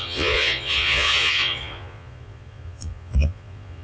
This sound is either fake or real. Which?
fake